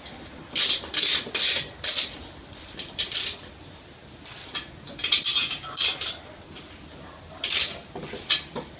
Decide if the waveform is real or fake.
real